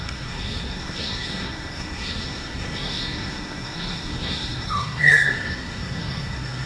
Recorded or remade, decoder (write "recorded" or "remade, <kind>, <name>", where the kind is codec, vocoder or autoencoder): remade, codec, SNAC